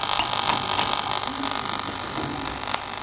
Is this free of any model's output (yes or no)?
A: yes